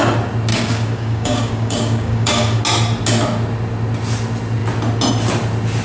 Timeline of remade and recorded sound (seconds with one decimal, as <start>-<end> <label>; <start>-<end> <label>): 0.0-0.5 recorded; 0.5-2.6 remade; 2.6-5.8 recorded